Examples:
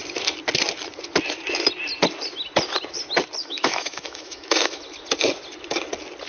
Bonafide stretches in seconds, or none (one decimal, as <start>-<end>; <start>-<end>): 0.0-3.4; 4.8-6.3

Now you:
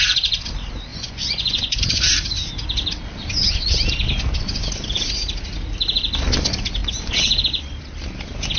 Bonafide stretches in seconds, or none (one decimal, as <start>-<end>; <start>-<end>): 0.0-0.9; 2.0-8.6

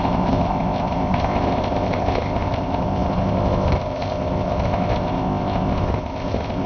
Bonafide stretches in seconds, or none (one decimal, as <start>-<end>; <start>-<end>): none